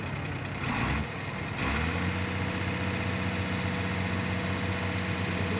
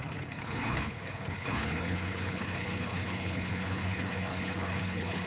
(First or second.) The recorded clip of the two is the first